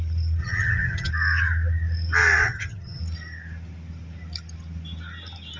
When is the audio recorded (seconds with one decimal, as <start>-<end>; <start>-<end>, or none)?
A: 0.0-0.4; 1.1-2.4; 3.0-5.6